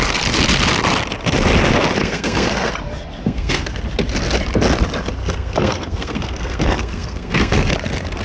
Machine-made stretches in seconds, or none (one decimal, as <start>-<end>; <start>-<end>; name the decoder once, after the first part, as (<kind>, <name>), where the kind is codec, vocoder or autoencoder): 2.0-2.7 (codec, SNAC); 3.2-3.8; 5.2-7.7